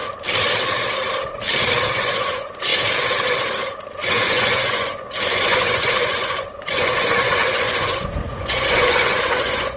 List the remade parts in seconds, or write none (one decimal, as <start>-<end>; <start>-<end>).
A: 1.9-2.7; 4.0-9.8